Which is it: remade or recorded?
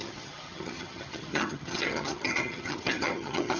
remade